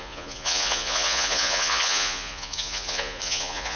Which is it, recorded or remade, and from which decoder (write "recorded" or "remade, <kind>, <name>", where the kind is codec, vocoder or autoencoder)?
remade, vocoder, Vocos